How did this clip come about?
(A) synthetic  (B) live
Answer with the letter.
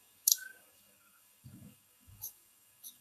A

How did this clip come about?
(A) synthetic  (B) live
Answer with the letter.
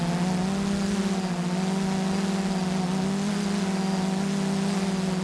B